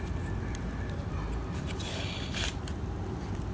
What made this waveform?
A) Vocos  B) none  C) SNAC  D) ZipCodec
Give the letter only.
B